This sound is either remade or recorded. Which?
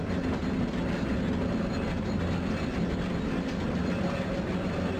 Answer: recorded